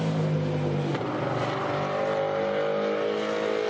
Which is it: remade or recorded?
recorded